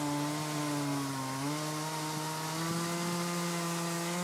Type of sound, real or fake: real